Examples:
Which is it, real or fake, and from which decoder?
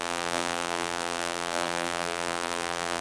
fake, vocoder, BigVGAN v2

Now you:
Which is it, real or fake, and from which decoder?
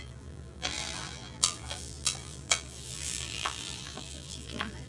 fake, vocoder, BigVGAN v2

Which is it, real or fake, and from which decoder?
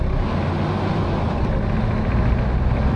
real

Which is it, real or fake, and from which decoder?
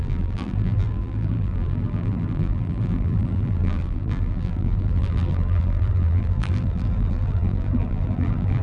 fake, vocoder, BigVGAN v2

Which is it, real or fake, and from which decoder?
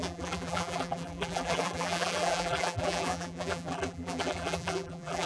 fake, vocoder, BigVGAN v2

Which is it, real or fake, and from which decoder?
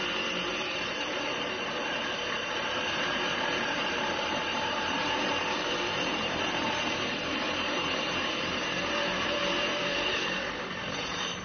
fake, vocoder, BigVGAN v2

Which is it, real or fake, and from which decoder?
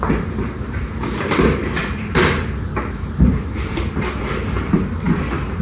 fake, vocoder, BigVGAN v2